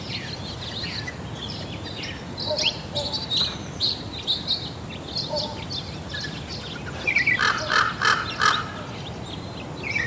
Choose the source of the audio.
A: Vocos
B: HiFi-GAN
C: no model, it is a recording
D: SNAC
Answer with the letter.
C